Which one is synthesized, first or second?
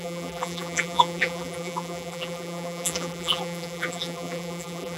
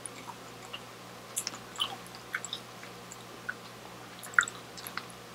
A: first